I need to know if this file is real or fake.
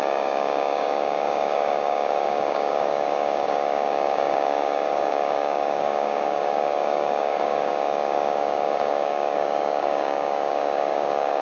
fake